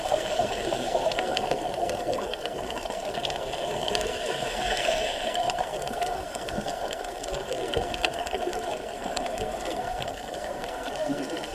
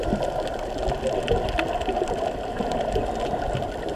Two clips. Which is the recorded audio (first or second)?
second